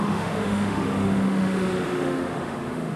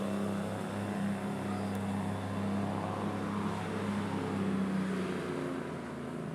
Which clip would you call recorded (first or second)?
second